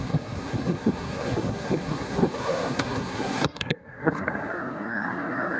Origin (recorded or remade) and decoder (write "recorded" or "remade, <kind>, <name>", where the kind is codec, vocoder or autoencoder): remade, codec, SNAC